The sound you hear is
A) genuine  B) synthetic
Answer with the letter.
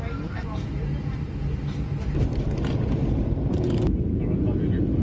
A